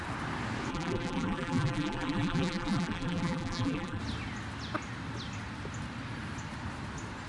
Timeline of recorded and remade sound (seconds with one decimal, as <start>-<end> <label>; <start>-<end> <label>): 0.0-0.7 recorded; 0.7-4.0 remade; 4.0-7.3 recorded